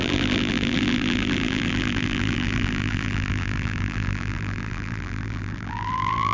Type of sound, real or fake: fake